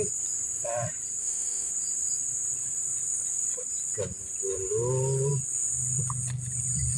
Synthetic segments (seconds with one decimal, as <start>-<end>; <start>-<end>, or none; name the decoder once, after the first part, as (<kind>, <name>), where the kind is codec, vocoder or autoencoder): 1.2-1.7 (autoencoder, DAC-VAE)